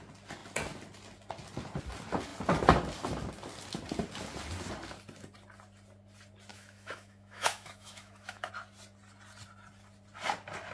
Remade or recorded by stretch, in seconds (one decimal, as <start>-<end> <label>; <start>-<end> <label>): 0.0-6.5 recorded; 6.5-8.5 remade; 8.5-10.7 recorded